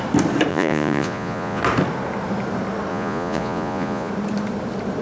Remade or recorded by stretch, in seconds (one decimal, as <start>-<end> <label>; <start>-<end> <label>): 0.0-0.5 recorded; 0.5-1.6 remade; 1.6-2.9 recorded; 2.9-4.1 remade; 4.1-5.0 recorded